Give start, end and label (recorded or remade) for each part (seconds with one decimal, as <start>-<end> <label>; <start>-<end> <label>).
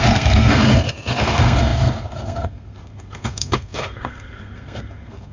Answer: 0.0-5.3 remade